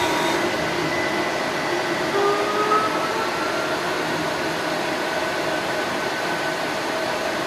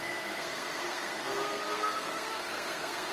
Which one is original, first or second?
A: first